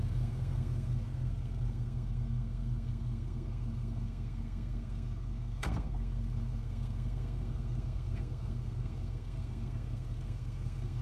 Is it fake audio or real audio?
fake